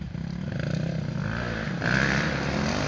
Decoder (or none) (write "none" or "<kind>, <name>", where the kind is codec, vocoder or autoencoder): none